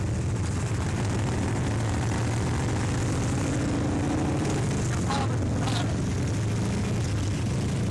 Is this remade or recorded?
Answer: recorded